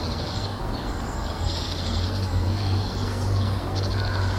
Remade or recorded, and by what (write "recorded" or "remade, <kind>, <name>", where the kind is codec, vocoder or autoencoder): remade, codec, SNAC